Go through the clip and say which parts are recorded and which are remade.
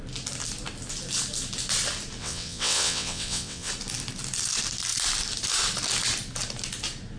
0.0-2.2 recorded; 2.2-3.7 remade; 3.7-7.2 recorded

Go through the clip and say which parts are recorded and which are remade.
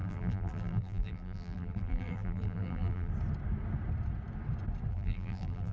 0.0-3.1 remade; 3.1-4.9 recorded; 4.9-5.7 remade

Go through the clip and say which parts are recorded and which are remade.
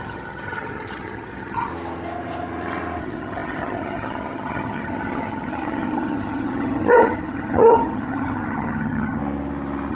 0.0-1.7 remade; 1.7-3.0 recorded; 3.0-9.2 remade; 9.2-9.9 recorded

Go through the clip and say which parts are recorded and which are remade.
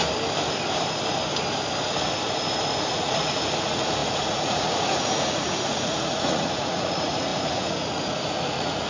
0.0-2.8 recorded; 2.8-8.9 remade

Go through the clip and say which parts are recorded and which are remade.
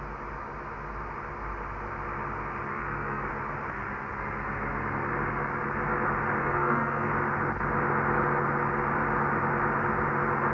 0.0-2.7 recorded; 2.7-3.3 remade; 3.3-6.4 recorded; 6.4-7.1 remade; 7.1-10.5 recorded